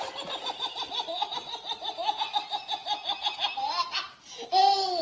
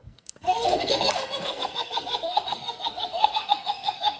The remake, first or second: second